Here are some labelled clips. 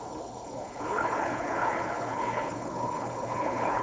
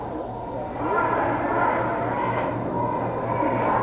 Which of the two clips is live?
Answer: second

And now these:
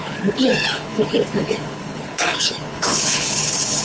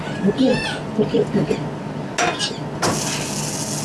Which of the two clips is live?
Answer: second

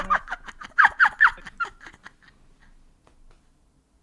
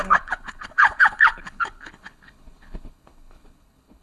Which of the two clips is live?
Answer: first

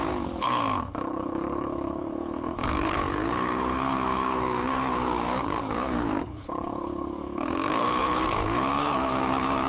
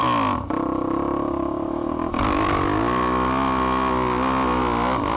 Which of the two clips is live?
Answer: second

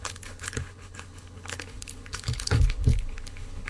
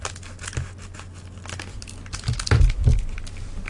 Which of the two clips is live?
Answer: second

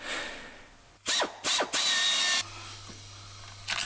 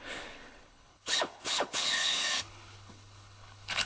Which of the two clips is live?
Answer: first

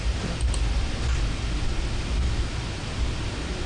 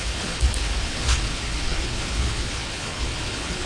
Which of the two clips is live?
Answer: first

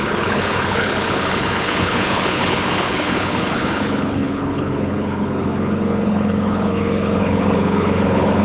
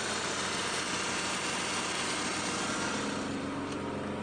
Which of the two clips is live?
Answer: second